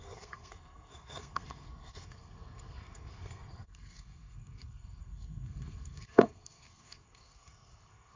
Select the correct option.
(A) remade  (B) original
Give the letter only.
A